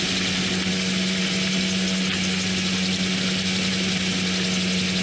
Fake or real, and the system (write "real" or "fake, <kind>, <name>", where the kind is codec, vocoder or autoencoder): real